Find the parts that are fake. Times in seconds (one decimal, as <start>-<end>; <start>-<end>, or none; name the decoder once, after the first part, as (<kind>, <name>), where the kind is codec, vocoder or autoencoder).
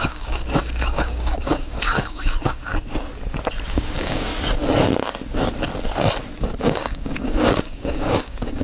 0.0-2.7 (codec, DAC); 3.7-4.3; 6.6-8.6